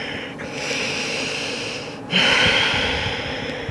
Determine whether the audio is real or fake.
real